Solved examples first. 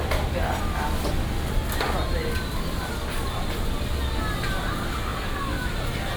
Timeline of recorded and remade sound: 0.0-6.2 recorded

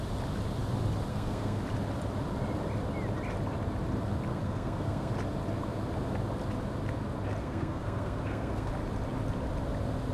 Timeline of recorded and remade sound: 0.0-1.1 recorded; 1.1-1.6 remade; 1.6-4.3 recorded; 4.3-5.1 remade; 5.1-7.4 recorded; 7.4-8.7 remade; 8.7-10.1 recorded

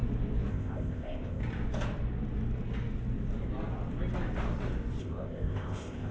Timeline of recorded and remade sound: 0.0-0.5 recorded; 0.5-1.4 remade; 1.4-5.0 recorded; 5.0-6.1 remade

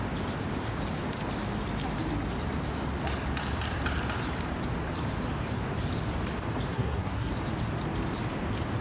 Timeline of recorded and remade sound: 0.0-6.7 recorded; 6.7-7.3 remade; 7.3-8.8 recorded

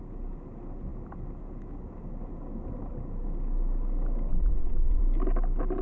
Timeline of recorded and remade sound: 0.0-4.3 recorded; 4.3-5.0 remade; 5.0-5.8 recorded

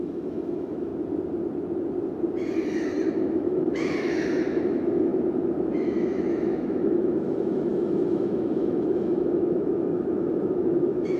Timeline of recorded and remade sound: 0.0-0.9 remade; 0.9-3.1 recorded; 3.1-5.1 remade; 5.1-5.7 recorded; 5.7-11.2 remade

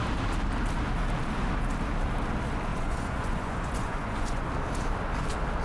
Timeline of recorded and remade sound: 0.0-2.7 recorded; 2.7-4.5 remade; 4.5-5.6 recorded